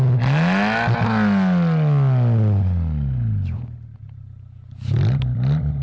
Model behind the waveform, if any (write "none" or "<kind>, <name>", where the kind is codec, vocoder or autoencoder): none